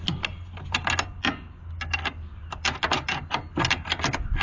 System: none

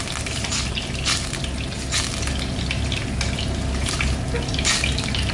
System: none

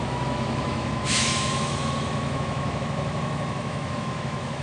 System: autoencoder, DAC-VAE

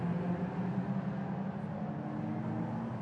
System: none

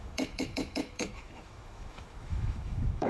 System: autoencoder, DAC-VAE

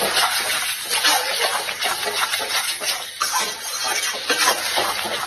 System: none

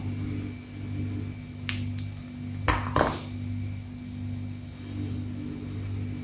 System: none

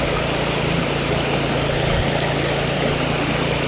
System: none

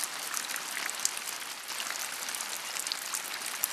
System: none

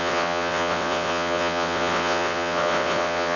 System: vocoder, WaveNeXt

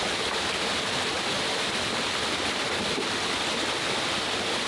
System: none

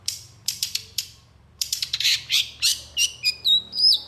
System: vocoder, BigVGAN v2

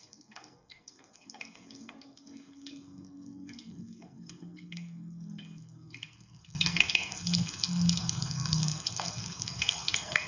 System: codec, SNAC